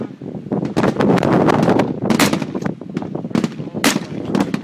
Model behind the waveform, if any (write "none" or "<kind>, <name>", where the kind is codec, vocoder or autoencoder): none